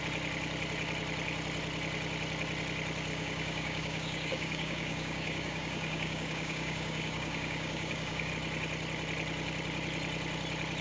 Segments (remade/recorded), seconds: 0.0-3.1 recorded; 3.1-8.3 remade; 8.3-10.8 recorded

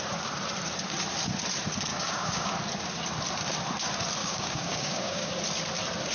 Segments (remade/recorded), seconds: 0.0-1.9 recorded; 1.9-2.5 remade; 2.5-4.2 recorded; 4.2-5.3 remade; 5.3-6.1 recorded